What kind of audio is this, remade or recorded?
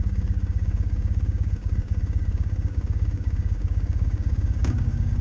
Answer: remade